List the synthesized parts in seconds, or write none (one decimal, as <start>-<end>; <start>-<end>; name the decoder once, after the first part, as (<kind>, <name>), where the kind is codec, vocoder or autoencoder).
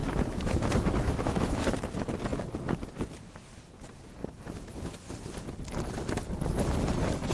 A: 0.0-1.7 (autoencoder, DAC-VAE); 4.2-5.1